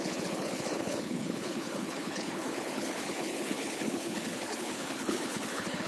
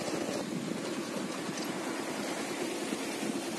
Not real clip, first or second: first